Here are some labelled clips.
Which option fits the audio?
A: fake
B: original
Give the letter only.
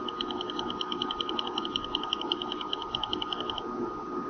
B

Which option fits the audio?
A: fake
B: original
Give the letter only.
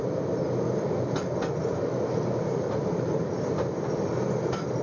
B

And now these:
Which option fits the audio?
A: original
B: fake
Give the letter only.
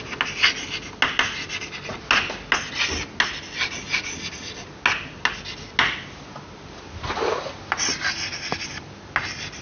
A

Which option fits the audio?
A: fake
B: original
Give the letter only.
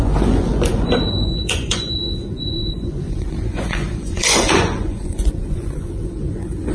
A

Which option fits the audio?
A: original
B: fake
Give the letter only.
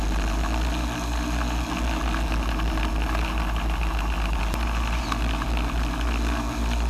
A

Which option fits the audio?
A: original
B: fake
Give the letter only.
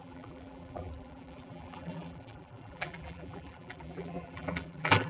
B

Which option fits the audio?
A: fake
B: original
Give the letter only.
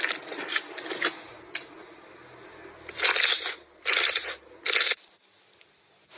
B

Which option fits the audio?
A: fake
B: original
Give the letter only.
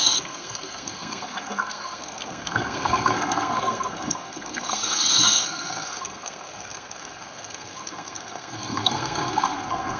A